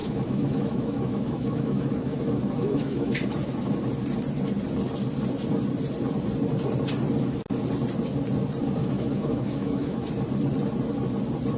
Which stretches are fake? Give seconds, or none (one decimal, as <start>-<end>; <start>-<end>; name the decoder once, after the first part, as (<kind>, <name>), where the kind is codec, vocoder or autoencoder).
0.0-3.1 (autoencoder, DAC-VAE); 8.8-10.1